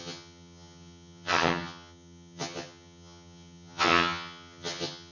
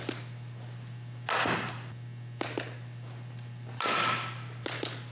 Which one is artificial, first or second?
first